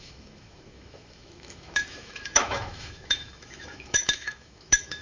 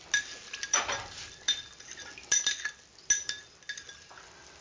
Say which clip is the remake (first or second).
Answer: first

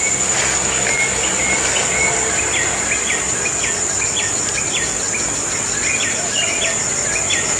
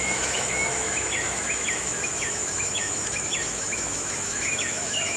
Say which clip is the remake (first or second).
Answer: second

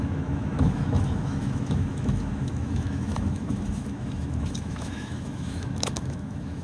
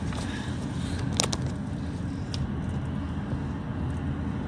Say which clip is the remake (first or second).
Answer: first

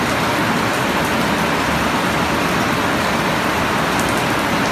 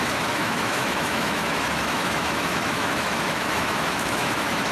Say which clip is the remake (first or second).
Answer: second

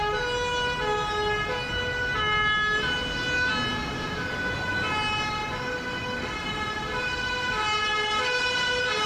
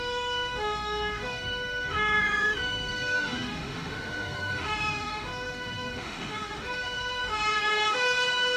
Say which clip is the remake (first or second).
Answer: second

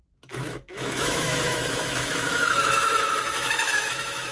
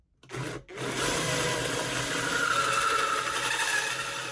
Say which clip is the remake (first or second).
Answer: first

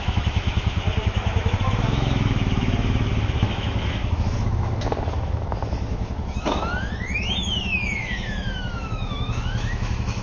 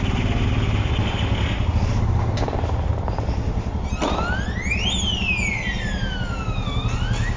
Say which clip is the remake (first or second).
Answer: first